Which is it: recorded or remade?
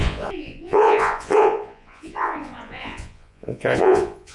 remade